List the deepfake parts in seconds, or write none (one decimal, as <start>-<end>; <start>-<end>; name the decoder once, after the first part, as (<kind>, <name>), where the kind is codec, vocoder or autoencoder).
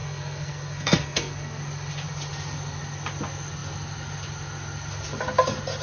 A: 0.0-1.6 (codec, SNAC)